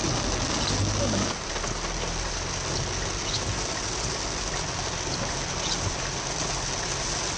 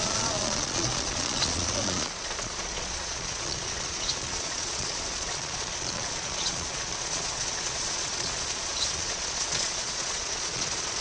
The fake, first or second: second